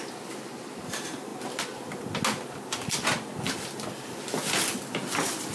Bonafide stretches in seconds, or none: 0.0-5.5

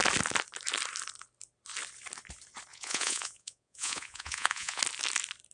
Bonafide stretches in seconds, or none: 0.0-2.7; 4.8-5.5

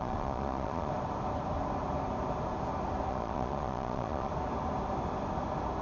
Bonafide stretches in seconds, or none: 0.9-3.1; 4.3-5.8

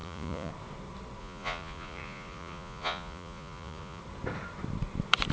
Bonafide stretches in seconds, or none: 0.5-1.2; 4.0-5.3

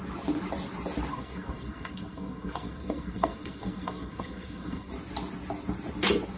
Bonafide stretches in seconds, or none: 0.0-1.1; 4.9-6.4

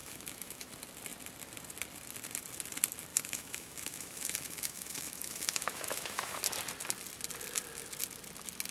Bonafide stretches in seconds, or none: 0.7-3.1; 6.4-8.7